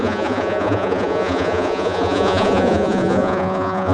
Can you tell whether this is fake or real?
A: fake